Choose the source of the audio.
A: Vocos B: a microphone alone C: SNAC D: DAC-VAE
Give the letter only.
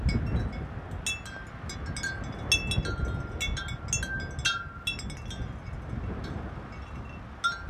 B